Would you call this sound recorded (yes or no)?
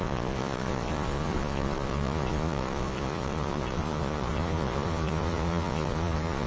no